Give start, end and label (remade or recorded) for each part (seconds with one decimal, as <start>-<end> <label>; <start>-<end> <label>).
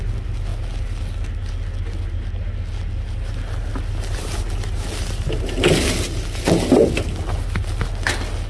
0.0-8.5 recorded